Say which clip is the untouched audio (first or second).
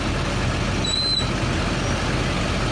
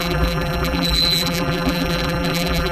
first